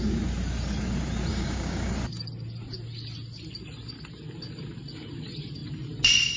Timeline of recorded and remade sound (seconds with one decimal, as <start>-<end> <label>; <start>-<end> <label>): 0.0-1.3 recorded; 1.3-1.9 remade; 1.9-6.4 recorded

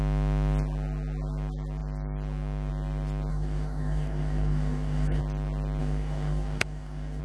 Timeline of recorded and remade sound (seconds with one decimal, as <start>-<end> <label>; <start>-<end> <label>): 0.0-3.3 recorded; 3.3-5.2 remade; 5.2-5.8 recorded; 5.8-7.2 remade

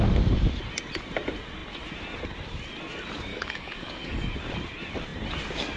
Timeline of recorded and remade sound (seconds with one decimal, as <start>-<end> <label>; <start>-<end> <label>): 0.0-3.3 recorded; 3.3-4.3 remade; 4.3-5.8 recorded

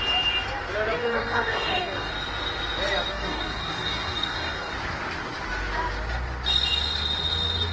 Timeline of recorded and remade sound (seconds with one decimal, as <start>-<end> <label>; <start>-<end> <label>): 0.0-1.0 recorded; 1.0-2.1 remade; 2.1-3.1 recorded; 3.1-4.7 remade; 4.7-7.7 recorded

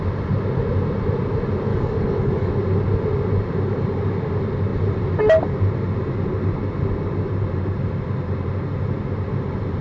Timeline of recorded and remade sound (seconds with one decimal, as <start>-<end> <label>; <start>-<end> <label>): 0.0-1.7 recorded; 1.7-2.5 remade; 2.5-9.8 recorded

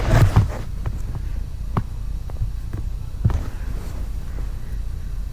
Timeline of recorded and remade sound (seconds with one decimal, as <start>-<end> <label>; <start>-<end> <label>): 0.0-5.3 recorded

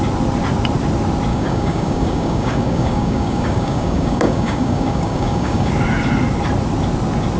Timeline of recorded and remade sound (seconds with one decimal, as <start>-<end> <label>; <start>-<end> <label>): 0.0-1.3 recorded; 1.3-5.7 remade; 5.7-7.4 recorded